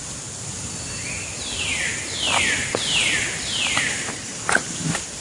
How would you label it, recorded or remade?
recorded